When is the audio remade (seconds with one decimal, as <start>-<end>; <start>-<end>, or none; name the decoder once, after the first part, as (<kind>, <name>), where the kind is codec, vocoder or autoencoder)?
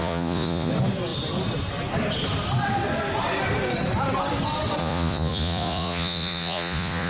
0.0-0.7 (vocoder, Vocos); 4.8-7.1